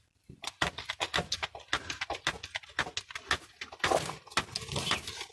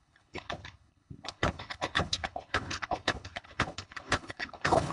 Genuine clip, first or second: first